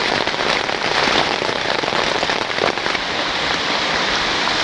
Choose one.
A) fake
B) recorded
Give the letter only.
B